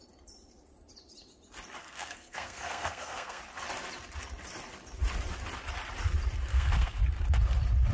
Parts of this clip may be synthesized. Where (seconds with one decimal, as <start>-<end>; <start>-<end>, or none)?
1.8-3.4; 6.5-7.0